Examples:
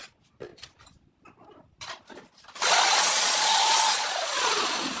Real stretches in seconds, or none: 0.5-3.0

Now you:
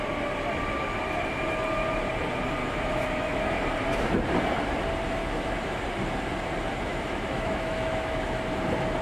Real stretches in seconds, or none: 0.0-2.6; 3.6-5.2; 5.8-6.9; 8.4-9.0

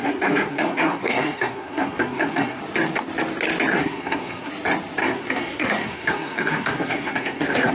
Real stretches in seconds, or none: 2.6-3.7; 4.5-5.0